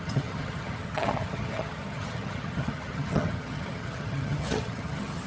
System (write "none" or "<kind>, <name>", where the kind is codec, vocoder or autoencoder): vocoder, HiFi-GAN